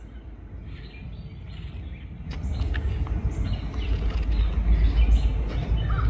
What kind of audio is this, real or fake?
real